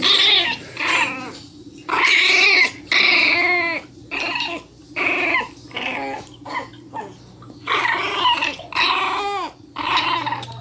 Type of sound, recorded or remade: recorded